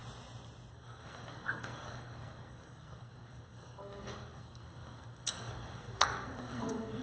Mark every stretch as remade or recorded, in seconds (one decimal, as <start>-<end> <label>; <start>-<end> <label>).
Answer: 0.0-0.7 recorded; 0.7-7.0 remade